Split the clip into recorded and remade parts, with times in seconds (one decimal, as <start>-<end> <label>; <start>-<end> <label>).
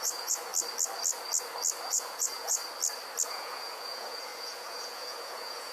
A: 0.0-0.5 remade; 0.5-1.8 recorded; 1.8-2.6 remade; 2.6-3.3 recorded; 3.3-5.7 remade